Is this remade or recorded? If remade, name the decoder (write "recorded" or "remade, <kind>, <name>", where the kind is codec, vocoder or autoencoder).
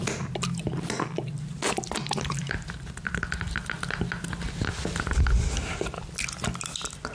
recorded